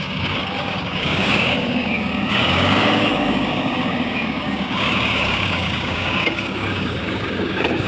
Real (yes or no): no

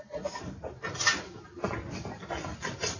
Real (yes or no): yes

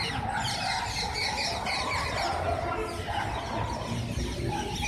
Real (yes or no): yes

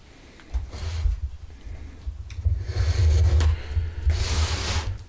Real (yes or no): yes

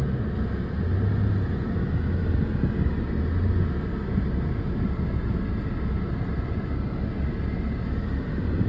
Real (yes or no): yes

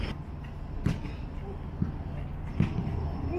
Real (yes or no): yes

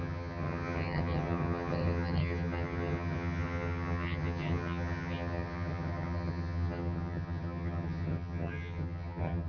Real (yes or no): no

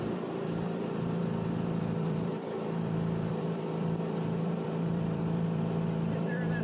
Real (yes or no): no